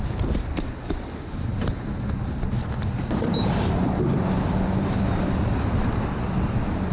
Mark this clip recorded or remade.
recorded